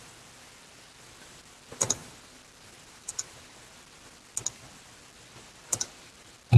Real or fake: real